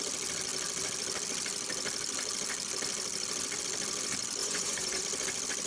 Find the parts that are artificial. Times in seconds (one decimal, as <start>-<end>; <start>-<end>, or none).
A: 4.4-5.0

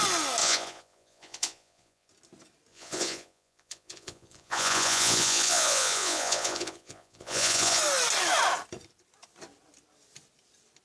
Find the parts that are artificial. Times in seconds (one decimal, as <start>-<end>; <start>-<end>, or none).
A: 0.4-2.1; 2.7-7.8

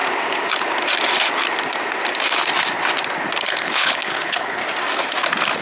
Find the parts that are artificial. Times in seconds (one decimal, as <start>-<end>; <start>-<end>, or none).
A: 3.4-4.6

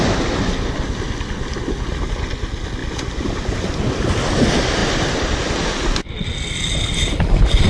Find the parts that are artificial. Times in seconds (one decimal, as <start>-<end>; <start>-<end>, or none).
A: none

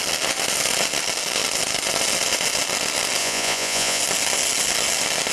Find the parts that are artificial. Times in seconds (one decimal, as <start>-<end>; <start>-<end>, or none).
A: 3.2-4.0

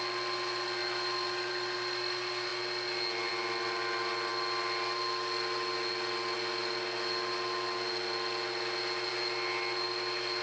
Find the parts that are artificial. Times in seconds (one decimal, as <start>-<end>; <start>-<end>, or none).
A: none

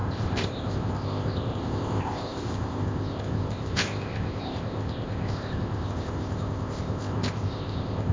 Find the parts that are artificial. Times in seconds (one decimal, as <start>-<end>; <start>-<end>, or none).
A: 0.0-8.1

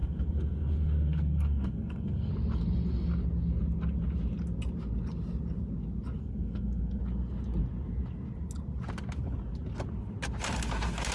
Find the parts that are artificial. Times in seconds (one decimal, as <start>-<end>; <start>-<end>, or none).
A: 0.0-2.3; 6.2-7.0